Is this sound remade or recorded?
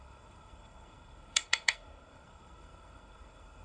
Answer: remade